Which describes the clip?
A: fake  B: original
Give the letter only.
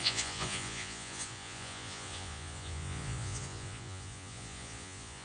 A